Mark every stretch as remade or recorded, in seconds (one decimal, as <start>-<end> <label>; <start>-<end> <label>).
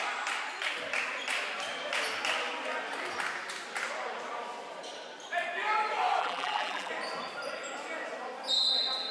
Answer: 0.0-6.2 recorded; 6.2-6.9 remade; 6.9-9.1 recorded